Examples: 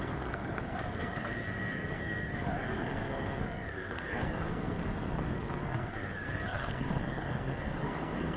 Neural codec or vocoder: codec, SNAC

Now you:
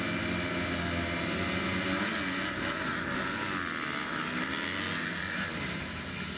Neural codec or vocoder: none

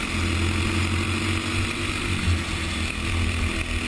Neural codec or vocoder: none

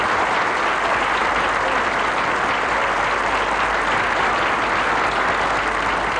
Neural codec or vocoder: none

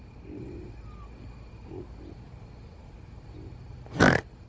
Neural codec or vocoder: none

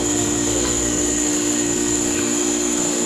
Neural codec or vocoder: codec, SNAC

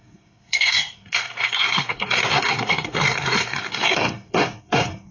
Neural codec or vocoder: codec, SNAC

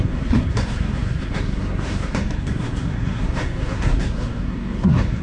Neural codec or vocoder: codec, SNAC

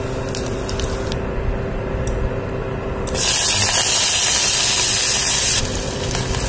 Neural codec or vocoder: none